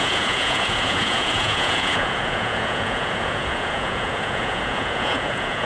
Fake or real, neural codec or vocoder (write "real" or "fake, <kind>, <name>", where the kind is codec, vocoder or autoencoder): fake, vocoder, Vocos